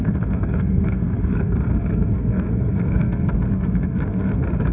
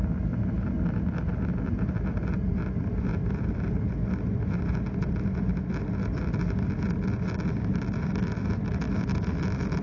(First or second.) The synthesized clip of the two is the first